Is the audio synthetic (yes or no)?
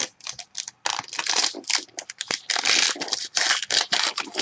no